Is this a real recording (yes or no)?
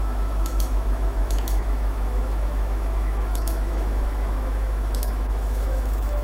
no